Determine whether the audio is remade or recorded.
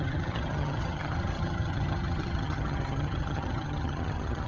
remade